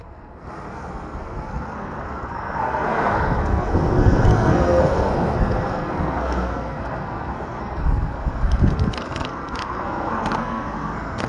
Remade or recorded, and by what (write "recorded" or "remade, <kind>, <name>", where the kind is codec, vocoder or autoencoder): remade, codec, SNAC